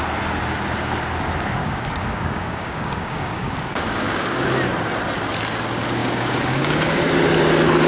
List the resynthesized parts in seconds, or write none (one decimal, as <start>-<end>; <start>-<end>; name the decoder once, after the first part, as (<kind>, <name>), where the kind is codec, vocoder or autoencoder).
1.6-4.4 (codec, DAC); 6.0-7.0